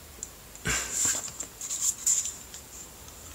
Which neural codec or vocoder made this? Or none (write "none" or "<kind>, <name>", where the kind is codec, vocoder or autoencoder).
none